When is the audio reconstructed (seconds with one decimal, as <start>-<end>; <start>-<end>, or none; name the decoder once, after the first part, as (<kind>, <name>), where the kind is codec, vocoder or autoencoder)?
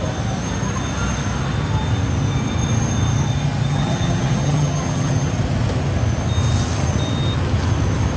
3.7-5.3 (vocoder, HiFi-GAN)